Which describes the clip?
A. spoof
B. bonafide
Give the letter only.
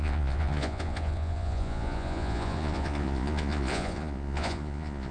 A